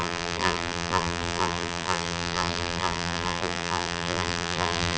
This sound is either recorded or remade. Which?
remade